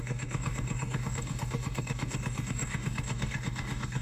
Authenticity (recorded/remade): remade